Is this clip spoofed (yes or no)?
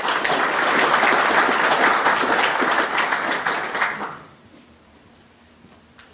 yes